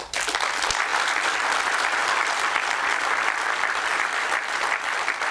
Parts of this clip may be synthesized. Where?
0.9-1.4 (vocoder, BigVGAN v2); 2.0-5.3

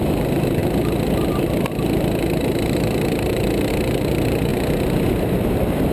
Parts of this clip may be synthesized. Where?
0.0-4.5 (vocoder, BigVGAN v2); 5.4-5.9

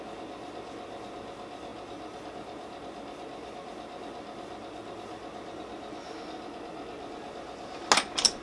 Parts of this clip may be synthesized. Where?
none

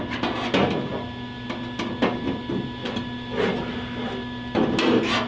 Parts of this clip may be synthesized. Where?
none